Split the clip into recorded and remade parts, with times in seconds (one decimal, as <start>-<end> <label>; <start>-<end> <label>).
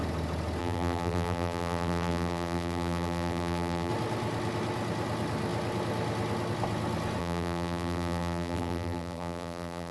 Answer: 0.0-0.6 recorded; 0.6-3.9 remade; 3.9-7.2 recorded; 7.2-9.9 remade